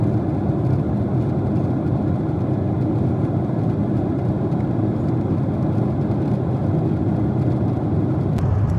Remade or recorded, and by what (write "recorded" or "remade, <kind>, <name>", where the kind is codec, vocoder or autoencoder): recorded